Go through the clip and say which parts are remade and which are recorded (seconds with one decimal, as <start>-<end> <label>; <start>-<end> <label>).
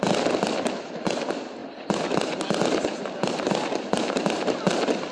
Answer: 0.0-5.1 recorded